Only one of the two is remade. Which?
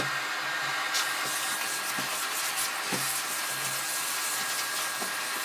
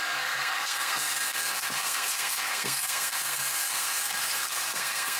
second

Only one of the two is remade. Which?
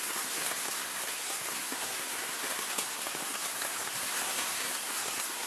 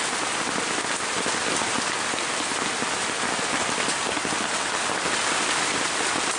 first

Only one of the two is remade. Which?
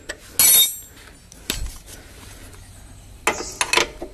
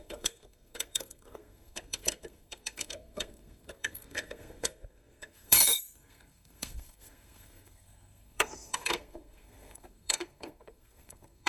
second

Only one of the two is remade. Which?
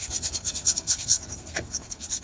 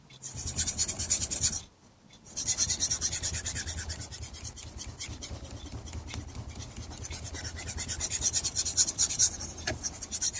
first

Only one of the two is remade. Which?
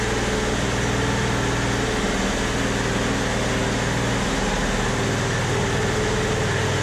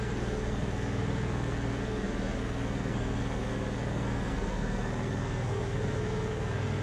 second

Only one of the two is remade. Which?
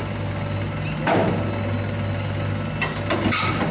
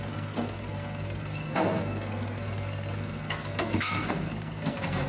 second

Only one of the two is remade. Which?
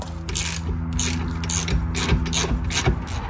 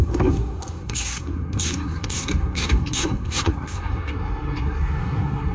second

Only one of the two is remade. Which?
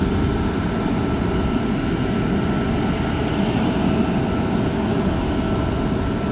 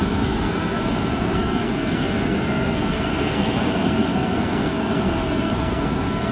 second